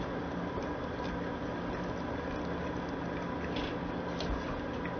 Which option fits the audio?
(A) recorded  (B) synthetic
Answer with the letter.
A